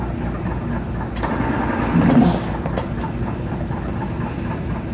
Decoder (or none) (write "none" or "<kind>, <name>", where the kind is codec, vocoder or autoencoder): none